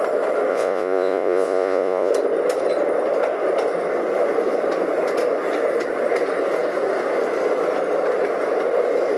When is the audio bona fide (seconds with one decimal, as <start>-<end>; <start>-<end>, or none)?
0.0-0.5; 2.1-9.2